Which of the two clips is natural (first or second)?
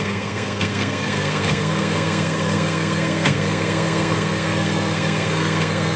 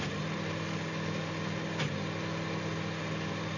second